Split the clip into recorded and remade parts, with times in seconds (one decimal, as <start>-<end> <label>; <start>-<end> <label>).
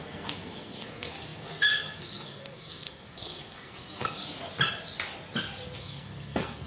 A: 0.0-4.2 remade; 4.2-5.8 recorded; 5.8-6.7 remade